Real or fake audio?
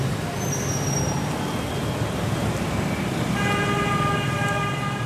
real